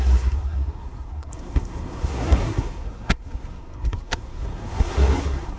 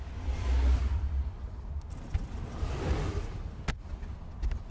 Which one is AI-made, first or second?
first